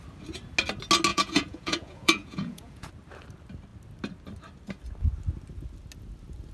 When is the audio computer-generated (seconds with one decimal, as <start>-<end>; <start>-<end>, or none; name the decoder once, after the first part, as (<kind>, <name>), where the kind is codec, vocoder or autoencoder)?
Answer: 1.1-2.9 (vocoder, Vocos)